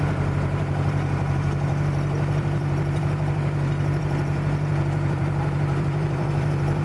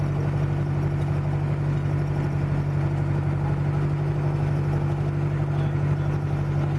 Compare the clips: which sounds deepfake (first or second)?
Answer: first